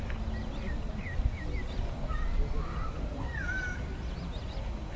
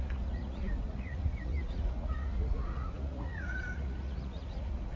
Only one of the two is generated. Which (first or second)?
second